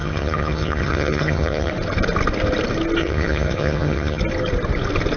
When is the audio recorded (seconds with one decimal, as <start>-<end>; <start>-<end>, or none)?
1.7-3.0; 4.2-5.2